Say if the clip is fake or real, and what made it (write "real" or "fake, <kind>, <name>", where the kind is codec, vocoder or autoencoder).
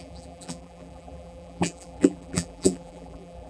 fake, vocoder, BigVGAN v2